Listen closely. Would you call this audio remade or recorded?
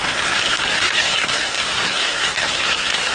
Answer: remade